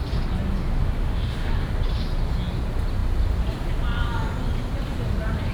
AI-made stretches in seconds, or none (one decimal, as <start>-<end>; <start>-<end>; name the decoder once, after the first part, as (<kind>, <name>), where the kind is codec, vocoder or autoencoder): 1.0-1.5 (autoencoder, DAC-VAE)